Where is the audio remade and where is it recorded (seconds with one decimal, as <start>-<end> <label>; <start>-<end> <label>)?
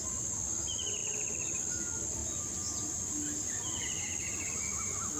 0.0-5.2 recorded